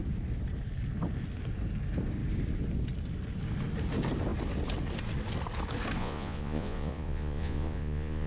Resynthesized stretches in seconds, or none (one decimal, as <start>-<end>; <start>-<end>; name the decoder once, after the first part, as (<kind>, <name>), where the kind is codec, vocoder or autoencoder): 6.0-8.3 (vocoder, Vocos)